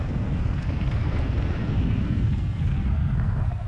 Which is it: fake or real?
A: fake